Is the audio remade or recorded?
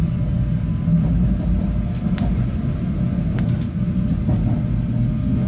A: recorded